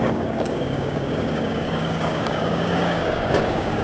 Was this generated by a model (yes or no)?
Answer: yes